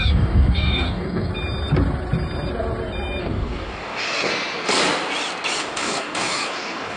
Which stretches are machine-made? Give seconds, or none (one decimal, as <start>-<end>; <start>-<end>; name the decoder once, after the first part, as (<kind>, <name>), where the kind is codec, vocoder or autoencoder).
0.0-1.3 (codec, DAC); 3.2-4.3; 5.6-7.0